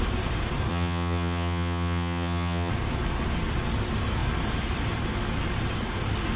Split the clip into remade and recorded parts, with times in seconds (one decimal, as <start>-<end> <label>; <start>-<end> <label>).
0.0-0.7 recorded; 0.7-2.7 remade; 2.7-6.4 recorded